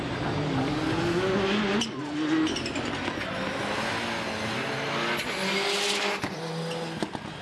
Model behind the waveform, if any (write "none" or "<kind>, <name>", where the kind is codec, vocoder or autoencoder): none